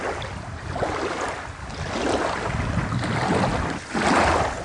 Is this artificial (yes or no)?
no